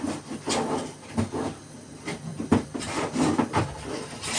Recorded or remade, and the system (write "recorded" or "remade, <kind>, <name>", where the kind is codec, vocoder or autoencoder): recorded